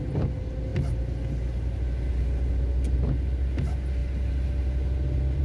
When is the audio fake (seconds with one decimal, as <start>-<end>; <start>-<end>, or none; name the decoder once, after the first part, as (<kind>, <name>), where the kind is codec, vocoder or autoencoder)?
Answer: none